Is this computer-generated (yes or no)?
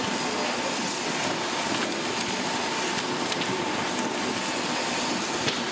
no